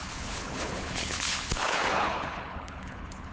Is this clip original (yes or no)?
no